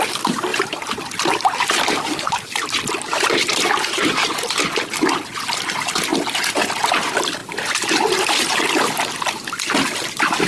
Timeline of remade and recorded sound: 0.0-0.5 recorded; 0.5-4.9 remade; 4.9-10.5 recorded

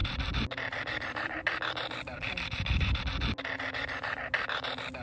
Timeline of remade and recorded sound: 0.0-3.0 remade; 3.0-5.0 recorded

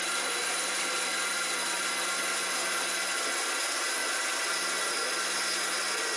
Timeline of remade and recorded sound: 0.0-0.7 remade; 0.7-1.1 recorded; 1.1-1.8 remade; 1.8-4.0 recorded; 4.0-4.9 remade; 4.9-6.2 recorded

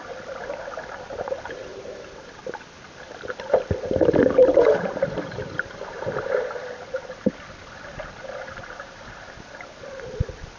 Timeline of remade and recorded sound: 0.0-1.7 recorded; 1.7-2.3 remade; 2.3-4.4 recorded; 4.4-5.9 remade; 5.9-10.6 recorded